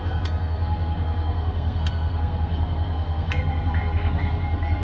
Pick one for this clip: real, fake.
fake